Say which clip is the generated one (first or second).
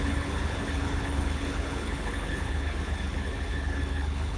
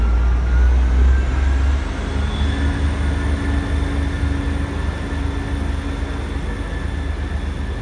first